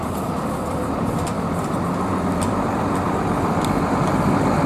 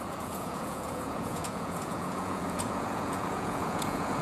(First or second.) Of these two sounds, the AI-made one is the second